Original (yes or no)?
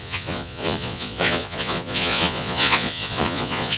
no